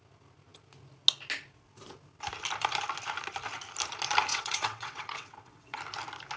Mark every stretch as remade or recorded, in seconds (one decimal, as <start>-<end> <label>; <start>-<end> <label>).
0.0-4.3 recorded; 4.3-5.8 remade; 5.8-6.4 recorded